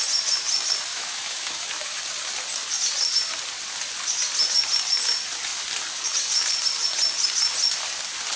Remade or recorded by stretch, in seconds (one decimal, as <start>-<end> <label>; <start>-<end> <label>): 0.0-0.9 recorded; 0.9-2.0 remade; 2.0-8.4 recorded